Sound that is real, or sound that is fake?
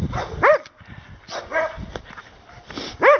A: real